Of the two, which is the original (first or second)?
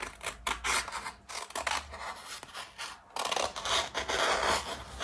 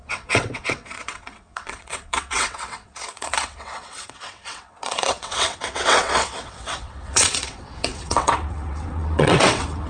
first